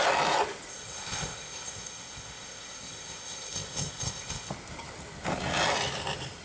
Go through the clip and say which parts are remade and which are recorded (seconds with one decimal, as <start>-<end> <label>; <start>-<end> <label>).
0.0-0.7 recorded; 0.7-4.5 remade; 4.5-6.4 recorded